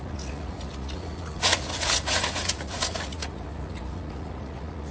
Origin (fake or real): fake